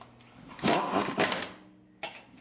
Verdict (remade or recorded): recorded